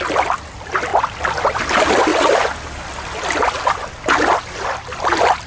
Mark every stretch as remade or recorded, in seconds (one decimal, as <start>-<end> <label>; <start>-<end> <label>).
0.0-5.5 recorded